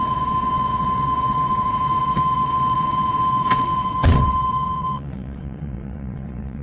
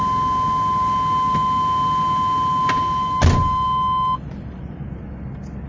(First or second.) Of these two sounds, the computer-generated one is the first